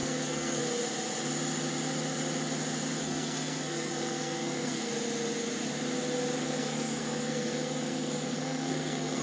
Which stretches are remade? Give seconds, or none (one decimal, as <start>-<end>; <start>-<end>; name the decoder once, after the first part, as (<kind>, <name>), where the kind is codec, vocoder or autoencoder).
0.0-0.6 (codec, SNAC); 3.0-4.9; 6.4-9.2